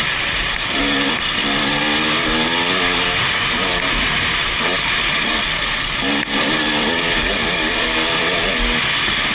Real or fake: real